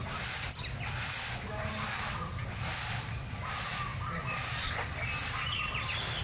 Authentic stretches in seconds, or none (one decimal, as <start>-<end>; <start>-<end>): 0.0-6.2